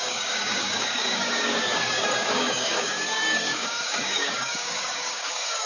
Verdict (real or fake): fake